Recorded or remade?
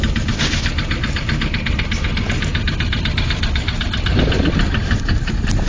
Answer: recorded